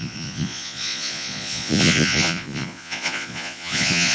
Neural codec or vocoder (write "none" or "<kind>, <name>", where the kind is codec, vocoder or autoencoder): vocoder, Vocos